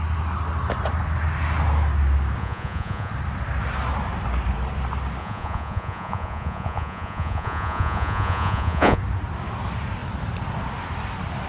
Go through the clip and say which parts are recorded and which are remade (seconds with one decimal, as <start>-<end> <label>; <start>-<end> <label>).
0.0-2.4 recorded; 2.4-3.1 remade; 3.1-5.2 recorded; 5.2-9.0 remade; 9.0-11.5 recorded